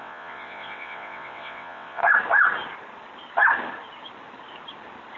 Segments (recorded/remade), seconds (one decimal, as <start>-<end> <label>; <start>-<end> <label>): 0.0-2.0 remade; 2.0-5.2 recorded